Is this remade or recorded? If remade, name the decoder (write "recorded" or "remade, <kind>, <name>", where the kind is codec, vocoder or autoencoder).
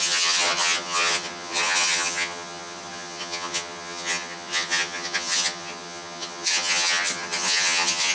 remade, vocoder, HiFi-GAN